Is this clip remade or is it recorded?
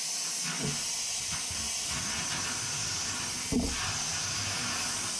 recorded